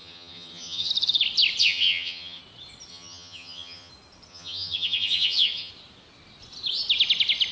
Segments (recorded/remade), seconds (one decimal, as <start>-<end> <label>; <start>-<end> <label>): 0.0-0.9 remade; 0.9-1.6 recorded; 1.6-2.4 remade; 2.4-2.9 recorded; 2.9-3.9 remade; 3.9-4.3 recorded; 4.3-5.7 remade; 5.7-7.5 recorded